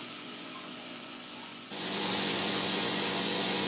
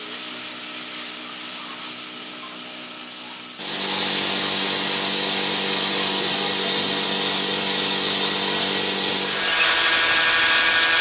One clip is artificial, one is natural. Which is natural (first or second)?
second